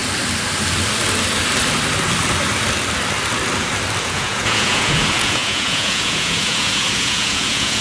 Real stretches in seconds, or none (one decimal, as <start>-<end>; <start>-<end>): 0.0-4.0